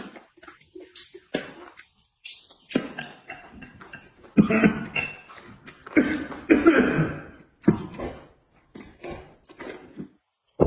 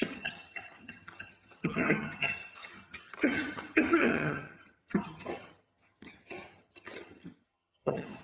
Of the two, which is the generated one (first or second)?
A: second